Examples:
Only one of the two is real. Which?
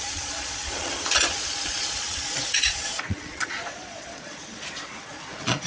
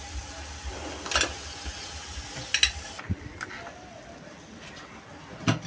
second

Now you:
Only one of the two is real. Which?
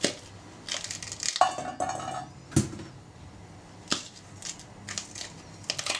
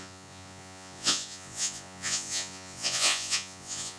first